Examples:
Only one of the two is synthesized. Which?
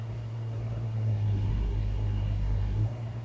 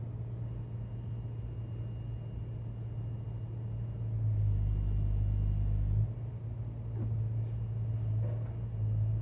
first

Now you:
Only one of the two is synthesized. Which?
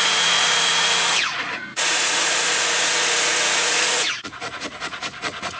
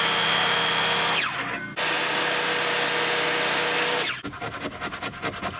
first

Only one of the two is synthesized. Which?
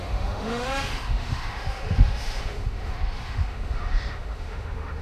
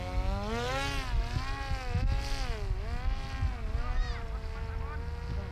first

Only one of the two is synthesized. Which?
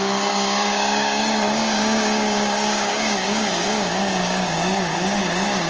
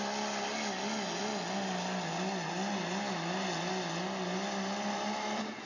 first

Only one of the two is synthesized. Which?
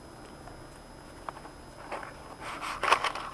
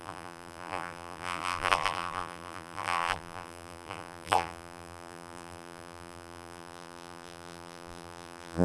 second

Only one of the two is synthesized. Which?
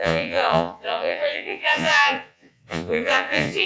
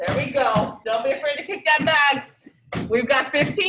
first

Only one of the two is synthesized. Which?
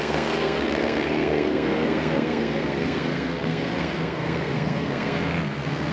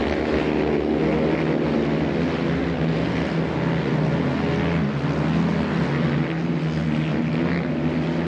first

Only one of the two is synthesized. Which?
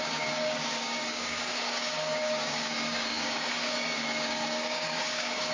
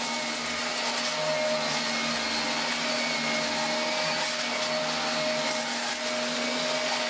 first